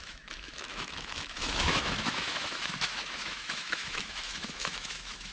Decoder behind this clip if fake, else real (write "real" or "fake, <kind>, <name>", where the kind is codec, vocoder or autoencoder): fake, autoencoder, DAC-VAE